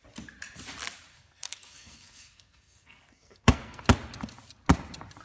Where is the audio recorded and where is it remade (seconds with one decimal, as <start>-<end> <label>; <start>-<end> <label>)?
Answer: 0.0-1.1 recorded; 1.1-3.8 remade; 3.8-5.2 recorded